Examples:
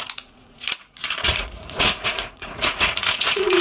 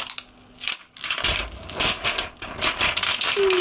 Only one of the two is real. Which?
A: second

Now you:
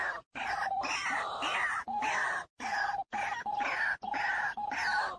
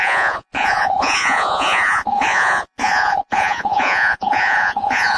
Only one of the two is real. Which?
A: first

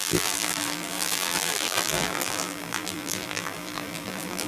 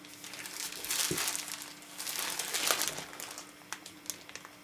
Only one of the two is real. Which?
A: second